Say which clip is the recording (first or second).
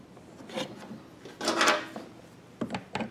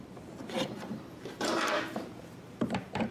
first